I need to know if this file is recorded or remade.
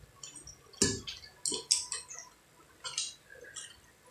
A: recorded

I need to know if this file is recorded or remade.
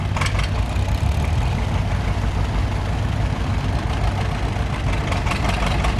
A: recorded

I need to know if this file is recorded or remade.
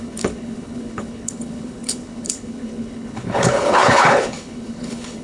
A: remade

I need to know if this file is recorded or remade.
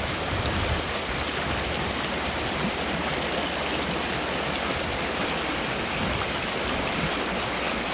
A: recorded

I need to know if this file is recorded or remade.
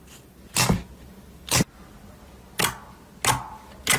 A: recorded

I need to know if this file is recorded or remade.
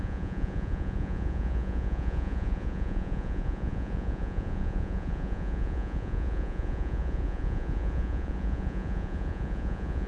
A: remade